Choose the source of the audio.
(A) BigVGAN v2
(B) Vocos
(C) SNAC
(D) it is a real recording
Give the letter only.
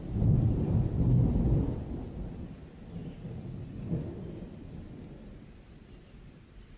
D